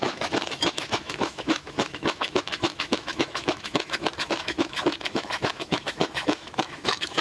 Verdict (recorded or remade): remade